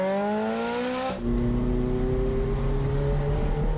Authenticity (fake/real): real